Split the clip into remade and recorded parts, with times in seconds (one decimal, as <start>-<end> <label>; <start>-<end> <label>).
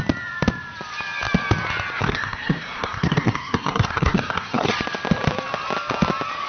0.0-2.0 recorded; 2.0-4.7 remade; 4.7-6.5 recorded